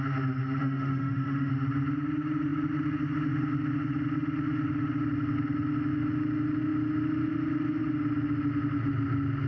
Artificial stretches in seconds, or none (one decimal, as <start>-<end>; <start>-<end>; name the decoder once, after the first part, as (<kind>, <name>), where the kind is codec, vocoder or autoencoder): 0.6-1.5 (autoencoder, DAC-VAE)